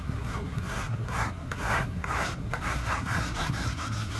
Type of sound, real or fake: fake